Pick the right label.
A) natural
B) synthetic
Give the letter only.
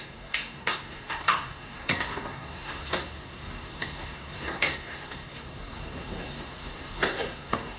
B